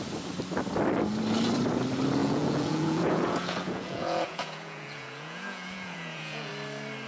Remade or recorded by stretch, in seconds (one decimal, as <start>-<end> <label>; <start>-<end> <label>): 0.0-2.2 recorded; 2.2-6.5 remade; 6.5-7.1 recorded